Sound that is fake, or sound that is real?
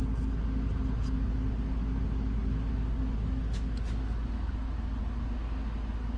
real